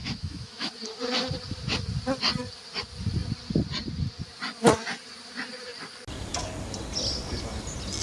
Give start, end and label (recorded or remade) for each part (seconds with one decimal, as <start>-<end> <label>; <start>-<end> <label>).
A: 0.0-0.7 remade; 0.7-8.0 recorded